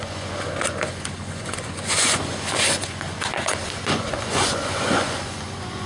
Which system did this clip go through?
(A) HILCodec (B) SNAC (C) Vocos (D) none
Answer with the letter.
C